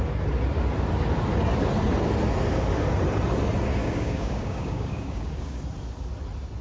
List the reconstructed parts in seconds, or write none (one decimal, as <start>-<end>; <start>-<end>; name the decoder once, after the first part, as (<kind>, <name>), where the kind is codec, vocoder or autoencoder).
3.8-5.6 (codec, DAC)